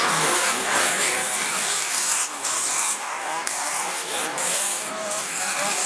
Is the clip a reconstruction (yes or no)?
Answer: yes